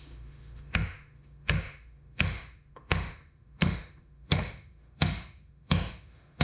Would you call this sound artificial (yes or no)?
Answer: yes